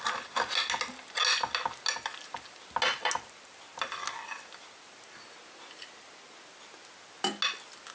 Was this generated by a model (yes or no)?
no